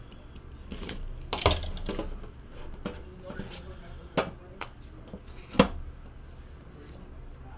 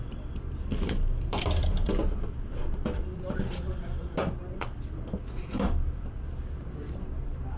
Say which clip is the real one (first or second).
first